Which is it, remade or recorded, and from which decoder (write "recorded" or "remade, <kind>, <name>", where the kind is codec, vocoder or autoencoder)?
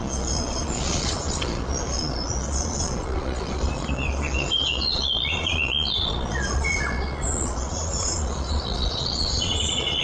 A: remade, vocoder, Vocos